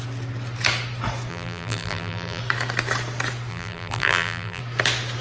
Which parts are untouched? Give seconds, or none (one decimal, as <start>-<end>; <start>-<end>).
0.0-1.3; 2.4-3.5; 4.6-5.2